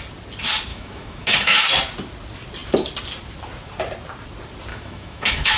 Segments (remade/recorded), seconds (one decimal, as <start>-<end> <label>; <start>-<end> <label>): 0.0-0.7 recorded; 0.7-1.6 remade; 1.6-4.7 recorded; 4.7-5.6 remade